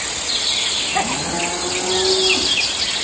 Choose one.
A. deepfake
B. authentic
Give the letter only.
B